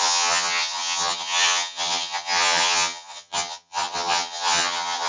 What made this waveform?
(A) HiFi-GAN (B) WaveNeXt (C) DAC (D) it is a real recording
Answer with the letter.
A